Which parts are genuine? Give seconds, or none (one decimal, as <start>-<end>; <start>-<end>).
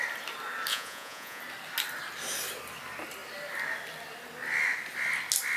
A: 0.0-0.7; 1.4-5.6